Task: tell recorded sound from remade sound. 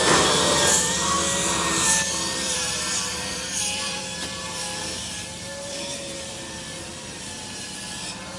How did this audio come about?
remade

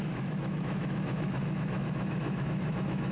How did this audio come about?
remade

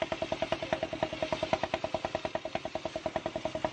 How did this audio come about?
recorded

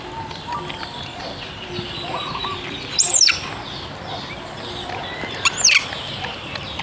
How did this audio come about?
recorded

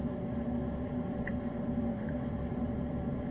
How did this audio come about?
remade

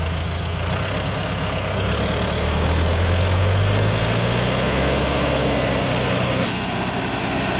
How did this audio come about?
recorded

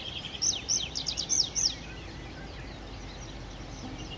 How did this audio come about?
remade